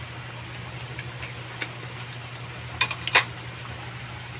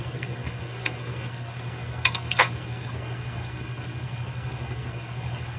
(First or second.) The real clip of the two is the first